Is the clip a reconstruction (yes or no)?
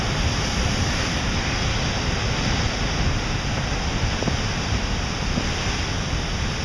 no